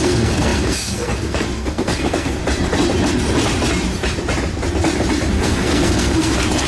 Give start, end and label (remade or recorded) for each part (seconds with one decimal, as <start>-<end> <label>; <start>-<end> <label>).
0.0-2.4 remade; 2.4-5.3 recorded; 5.3-6.7 remade